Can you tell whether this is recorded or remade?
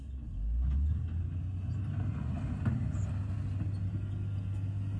recorded